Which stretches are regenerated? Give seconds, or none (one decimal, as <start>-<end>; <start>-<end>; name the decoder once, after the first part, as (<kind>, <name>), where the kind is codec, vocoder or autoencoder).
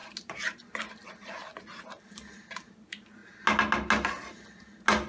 none